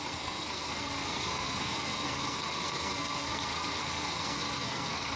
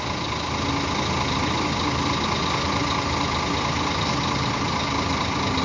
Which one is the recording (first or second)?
second